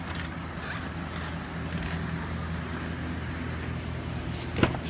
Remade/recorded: recorded